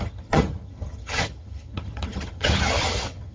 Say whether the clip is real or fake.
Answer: fake